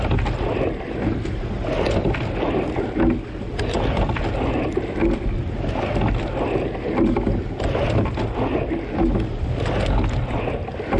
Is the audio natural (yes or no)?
yes